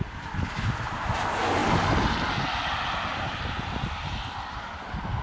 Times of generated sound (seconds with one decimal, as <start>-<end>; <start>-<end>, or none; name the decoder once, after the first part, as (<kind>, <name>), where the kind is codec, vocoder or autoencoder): none